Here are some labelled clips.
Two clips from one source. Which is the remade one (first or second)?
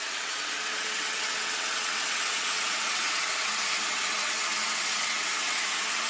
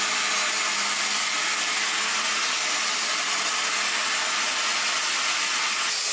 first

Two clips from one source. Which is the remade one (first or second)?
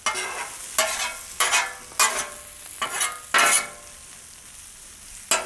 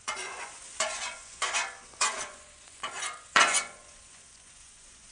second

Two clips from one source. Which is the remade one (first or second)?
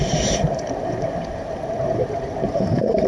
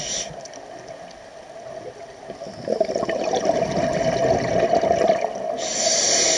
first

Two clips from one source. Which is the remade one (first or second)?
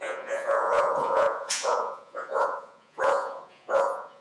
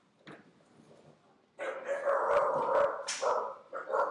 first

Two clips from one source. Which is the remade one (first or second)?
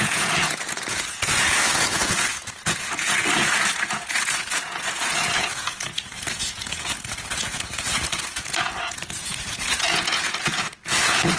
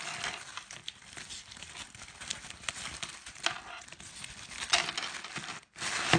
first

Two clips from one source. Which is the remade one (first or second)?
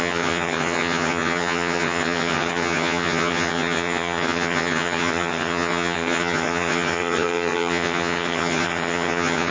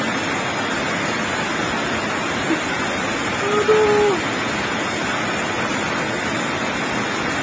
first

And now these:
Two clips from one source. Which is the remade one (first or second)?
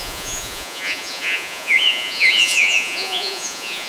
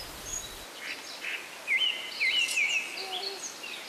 first